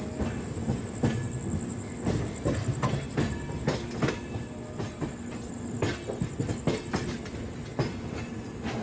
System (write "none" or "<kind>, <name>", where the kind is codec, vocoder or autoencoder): none